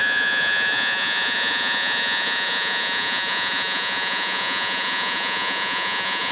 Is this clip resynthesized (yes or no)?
yes